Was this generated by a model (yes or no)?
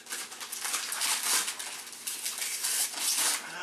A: no